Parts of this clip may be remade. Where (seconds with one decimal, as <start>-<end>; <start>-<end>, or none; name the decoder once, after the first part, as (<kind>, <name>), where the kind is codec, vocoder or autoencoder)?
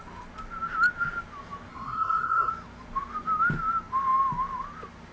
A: 1.7-2.5 (codec, SNAC)